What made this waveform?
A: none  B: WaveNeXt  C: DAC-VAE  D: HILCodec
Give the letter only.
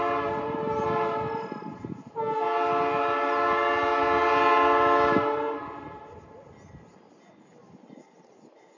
A